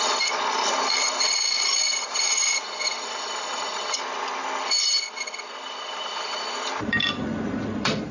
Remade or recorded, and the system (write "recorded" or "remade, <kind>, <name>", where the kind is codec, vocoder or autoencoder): recorded